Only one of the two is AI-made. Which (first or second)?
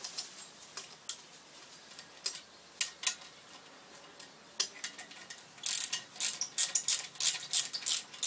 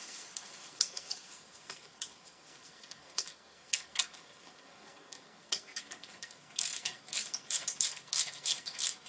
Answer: second